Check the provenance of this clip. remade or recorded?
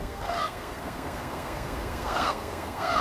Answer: remade